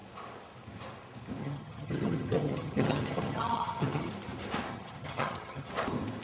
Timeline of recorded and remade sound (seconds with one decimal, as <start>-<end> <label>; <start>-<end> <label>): 0.0-1.4 recorded; 1.4-4.1 remade; 4.1-4.7 recorded; 4.7-5.7 remade; 5.7-6.2 recorded